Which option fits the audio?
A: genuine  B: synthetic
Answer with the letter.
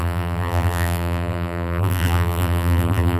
B